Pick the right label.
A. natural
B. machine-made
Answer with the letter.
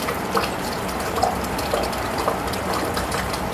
B